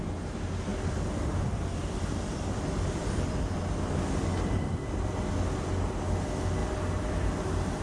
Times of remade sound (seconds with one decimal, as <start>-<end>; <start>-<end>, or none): 0.7-5.3; 6.6-7.8